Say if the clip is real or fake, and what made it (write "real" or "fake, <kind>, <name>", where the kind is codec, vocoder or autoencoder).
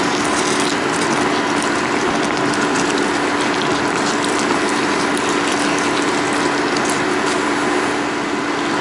real